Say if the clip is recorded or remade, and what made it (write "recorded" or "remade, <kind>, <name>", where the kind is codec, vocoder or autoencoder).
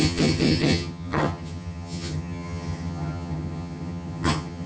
remade, vocoder, HiFi-GAN